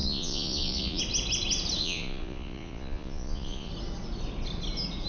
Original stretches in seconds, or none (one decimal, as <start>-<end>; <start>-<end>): 1.0-1.8; 3.7-5.1